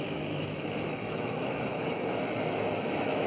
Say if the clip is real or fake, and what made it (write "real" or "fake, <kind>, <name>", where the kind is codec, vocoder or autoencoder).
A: fake, autoencoder, DAC-VAE